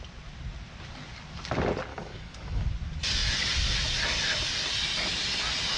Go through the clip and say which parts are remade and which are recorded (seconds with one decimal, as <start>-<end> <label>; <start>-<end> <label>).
0.0-1.9 recorded; 1.9-2.7 remade; 2.7-5.8 recorded